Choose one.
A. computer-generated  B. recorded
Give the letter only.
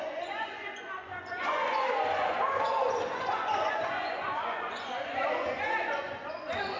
A